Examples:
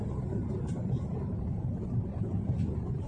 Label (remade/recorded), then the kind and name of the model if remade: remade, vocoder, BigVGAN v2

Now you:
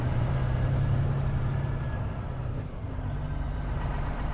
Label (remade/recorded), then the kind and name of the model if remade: remade, vocoder, BigVGAN v2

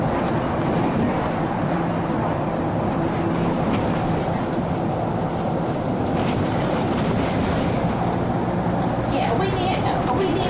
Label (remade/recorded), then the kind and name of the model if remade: remade, vocoder, BigVGAN v2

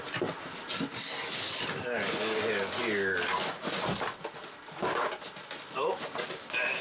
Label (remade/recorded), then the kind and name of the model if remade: recorded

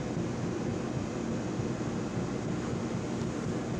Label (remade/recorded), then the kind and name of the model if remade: recorded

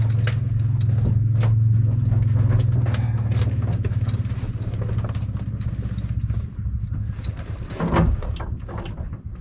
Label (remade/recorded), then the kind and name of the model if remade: recorded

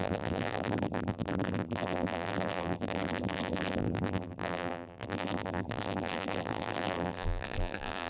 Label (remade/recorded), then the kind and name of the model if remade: remade, vocoder, BigVGAN v2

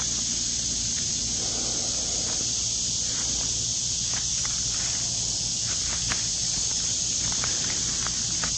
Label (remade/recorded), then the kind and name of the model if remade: recorded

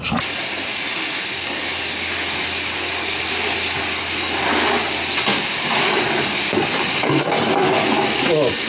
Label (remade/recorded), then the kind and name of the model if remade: recorded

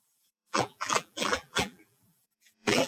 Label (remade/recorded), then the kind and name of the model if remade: remade, vocoder, BigVGAN v2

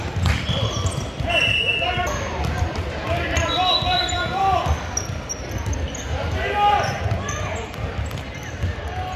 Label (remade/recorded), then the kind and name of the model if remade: remade, vocoder, BigVGAN v2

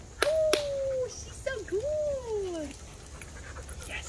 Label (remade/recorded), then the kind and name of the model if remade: recorded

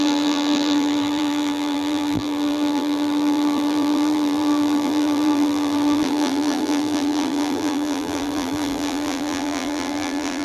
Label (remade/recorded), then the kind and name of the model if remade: remade, vocoder, BigVGAN v2